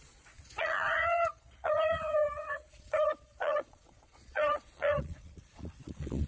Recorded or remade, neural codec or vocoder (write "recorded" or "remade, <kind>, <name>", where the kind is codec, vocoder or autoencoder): remade, vocoder, Vocos